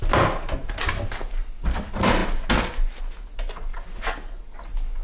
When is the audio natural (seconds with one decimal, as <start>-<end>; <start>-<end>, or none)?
0.0-5.0